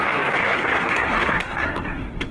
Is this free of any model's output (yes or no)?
no